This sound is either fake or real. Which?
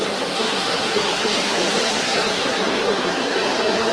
fake